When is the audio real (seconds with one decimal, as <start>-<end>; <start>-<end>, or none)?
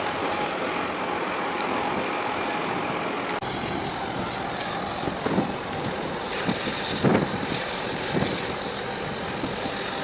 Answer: 0.0-10.0